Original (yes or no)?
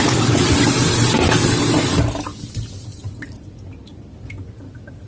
no